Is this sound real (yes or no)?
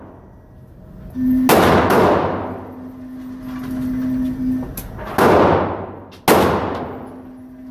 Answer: yes